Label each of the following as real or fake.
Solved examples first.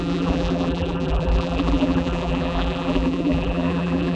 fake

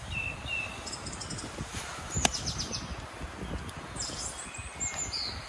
real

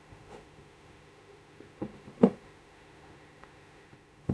fake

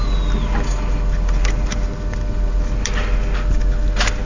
real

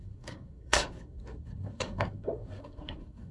fake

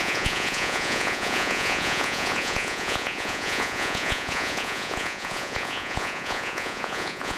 fake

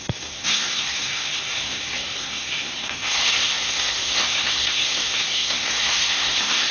fake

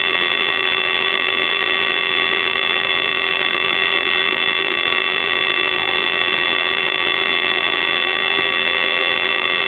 fake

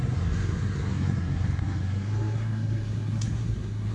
fake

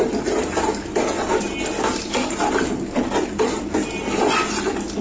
real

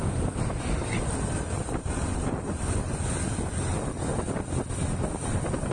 real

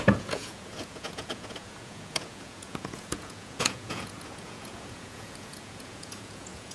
fake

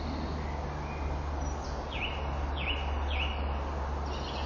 real